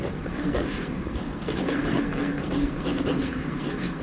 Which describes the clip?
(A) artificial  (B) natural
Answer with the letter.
A